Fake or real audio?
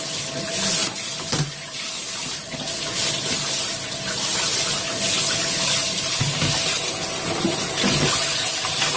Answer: real